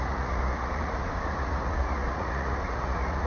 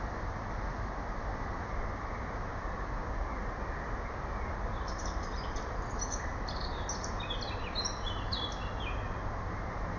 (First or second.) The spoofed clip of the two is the first